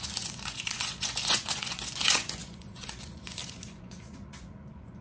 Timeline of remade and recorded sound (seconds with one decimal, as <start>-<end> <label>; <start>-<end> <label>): 0.0-5.0 remade